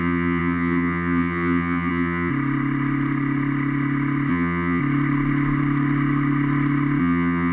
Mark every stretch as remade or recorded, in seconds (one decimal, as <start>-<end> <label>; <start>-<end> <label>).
0.0-2.3 remade; 2.3-4.3 recorded; 4.3-4.8 remade; 4.8-7.0 recorded; 7.0-7.5 remade